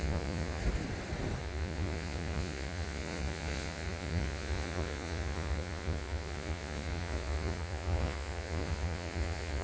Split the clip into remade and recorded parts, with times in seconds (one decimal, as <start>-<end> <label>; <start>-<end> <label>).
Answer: 0.0-0.6 remade; 0.6-1.4 recorded; 1.4-9.6 remade

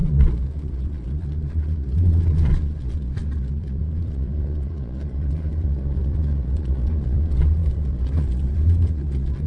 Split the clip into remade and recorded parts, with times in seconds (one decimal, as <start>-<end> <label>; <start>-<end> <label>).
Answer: 0.0-9.5 remade

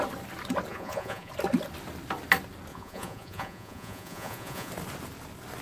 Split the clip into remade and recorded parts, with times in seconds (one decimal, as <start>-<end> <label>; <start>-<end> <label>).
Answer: 0.0-0.7 recorded; 0.7-1.3 remade; 1.3-2.7 recorded; 2.7-4.7 remade; 4.7-5.6 recorded

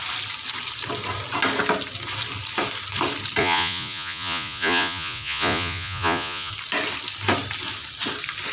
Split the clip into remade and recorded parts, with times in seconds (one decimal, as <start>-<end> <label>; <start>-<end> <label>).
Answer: 0.0-3.4 recorded; 3.4-6.5 remade; 6.5-8.5 recorded

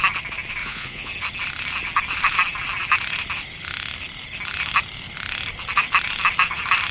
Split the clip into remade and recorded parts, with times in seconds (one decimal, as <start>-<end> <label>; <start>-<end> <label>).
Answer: 0.0-0.6 recorded; 0.6-1.1 remade; 1.1-6.9 recorded

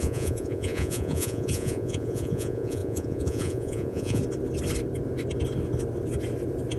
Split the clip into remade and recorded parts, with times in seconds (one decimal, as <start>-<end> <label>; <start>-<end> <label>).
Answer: 0.0-4.2 remade; 4.2-6.8 recorded